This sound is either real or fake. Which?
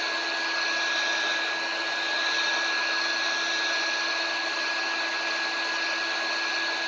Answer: real